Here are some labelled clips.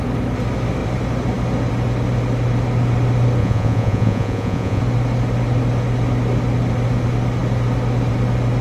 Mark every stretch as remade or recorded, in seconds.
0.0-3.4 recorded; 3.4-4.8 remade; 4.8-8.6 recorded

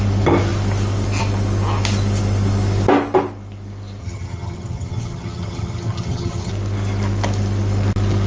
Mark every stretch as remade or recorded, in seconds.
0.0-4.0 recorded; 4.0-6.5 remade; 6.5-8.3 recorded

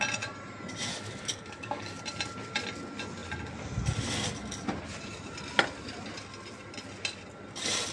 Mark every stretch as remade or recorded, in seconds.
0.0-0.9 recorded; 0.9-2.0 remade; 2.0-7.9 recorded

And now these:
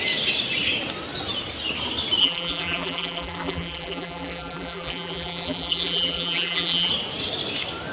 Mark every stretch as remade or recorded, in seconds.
0.0-2.2 recorded; 2.2-6.9 remade; 6.9-7.9 recorded

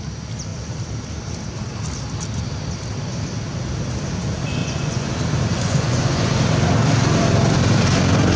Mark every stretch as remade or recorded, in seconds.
0.0-4.6 recorded; 4.6-5.1 remade; 5.1-5.5 recorded; 5.5-6.3 remade; 6.3-8.4 recorded

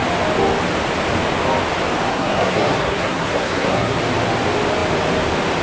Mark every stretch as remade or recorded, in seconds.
0.0-2.1 recorded; 2.1-4.0 remade; 4.0-5.6 recorded

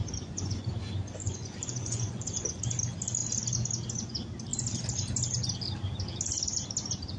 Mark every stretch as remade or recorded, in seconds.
0.0-0.7 remade; 0.7-1.2 recorded; 1.2-2.6 remade; 2.6-7.2 recorded

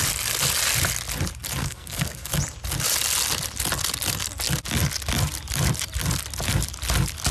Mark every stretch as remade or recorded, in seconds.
0.0-1.6 recorded; 1.6-2.3 remade; 2.3-7.3 recorded